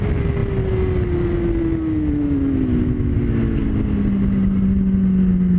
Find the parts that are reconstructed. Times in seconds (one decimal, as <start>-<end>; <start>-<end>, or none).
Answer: none